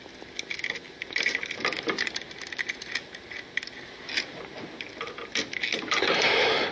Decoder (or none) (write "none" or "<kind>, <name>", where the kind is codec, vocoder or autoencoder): none